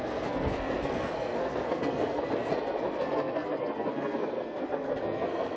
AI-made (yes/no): yes